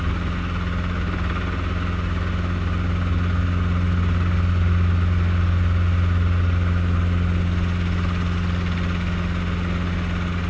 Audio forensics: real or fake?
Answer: real